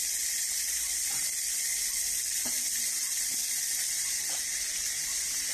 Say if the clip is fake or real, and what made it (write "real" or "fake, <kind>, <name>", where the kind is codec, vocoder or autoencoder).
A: real